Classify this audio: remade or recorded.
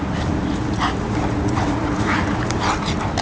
recorded